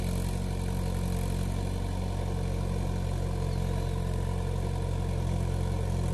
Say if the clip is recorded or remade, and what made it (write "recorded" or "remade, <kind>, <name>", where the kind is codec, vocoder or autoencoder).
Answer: recorded